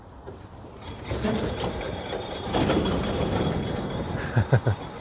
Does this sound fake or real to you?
fake